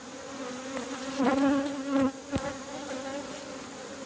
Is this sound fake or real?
real